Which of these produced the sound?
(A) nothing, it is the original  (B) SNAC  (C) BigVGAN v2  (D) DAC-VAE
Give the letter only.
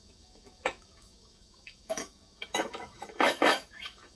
D